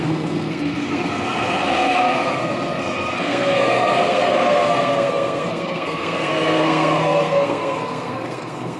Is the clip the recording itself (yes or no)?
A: no